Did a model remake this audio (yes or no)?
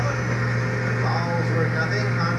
no